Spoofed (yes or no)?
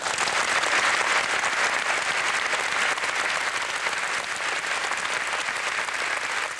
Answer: no